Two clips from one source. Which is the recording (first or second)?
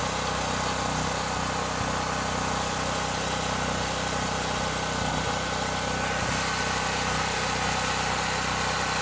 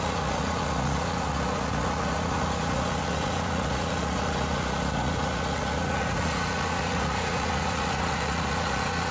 first